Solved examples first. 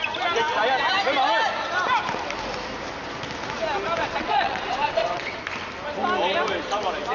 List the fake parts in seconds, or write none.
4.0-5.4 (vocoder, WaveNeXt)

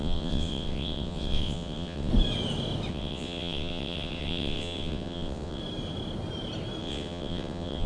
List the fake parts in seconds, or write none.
0.0-2.1 (vocoder, WaveNeXt); 2.9-5.6; 6.8-7.9

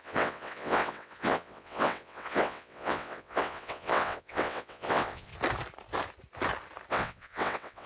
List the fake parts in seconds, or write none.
0.0-5.3 (vocoder, WaveNeXt); 6.9-7.9